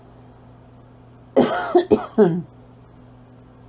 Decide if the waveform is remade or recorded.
recorded